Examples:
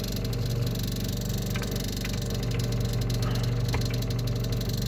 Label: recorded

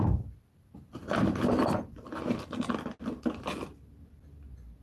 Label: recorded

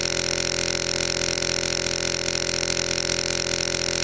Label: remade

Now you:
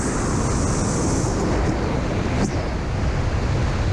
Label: recorded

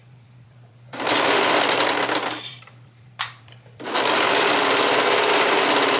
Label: remade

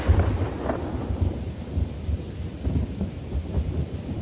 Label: remade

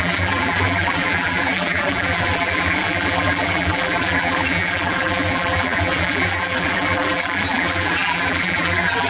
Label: remade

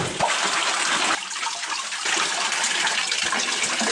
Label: remade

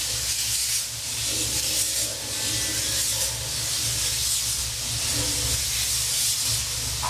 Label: recorded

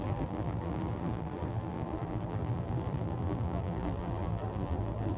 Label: remade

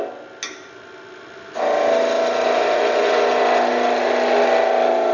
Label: recorded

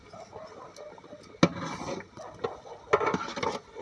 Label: recorded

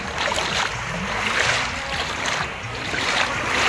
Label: remade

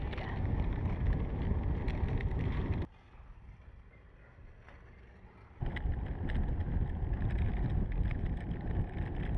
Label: recorded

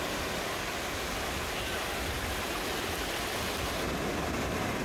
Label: recorded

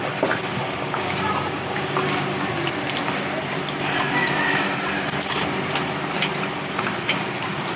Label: recorded